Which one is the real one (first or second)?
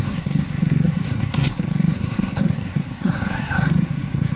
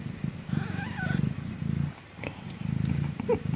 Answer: second